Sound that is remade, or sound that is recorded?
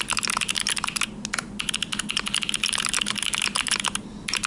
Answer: recorded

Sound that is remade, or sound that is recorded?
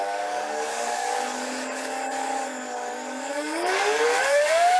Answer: remade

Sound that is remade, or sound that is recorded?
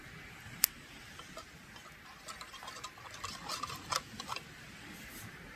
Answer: recorded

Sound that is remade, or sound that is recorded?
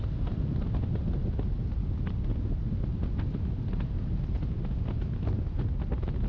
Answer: recorded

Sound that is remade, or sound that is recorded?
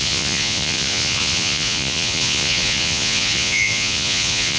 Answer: remade